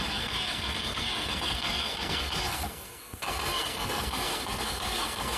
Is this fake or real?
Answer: fake